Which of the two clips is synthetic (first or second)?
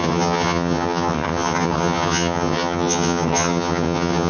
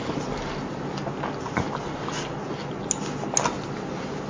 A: first